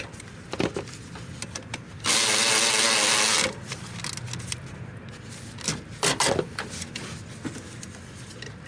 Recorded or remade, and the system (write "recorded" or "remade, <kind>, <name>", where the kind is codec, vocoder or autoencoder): recorded